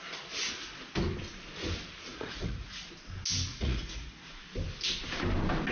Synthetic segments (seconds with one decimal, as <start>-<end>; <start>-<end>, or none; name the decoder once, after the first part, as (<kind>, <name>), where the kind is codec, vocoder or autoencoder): 2.1-2.9 (vocoder, Vocos); 3.5-4.4